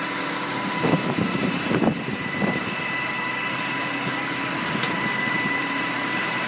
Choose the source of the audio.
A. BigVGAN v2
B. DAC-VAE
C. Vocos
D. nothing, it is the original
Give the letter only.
A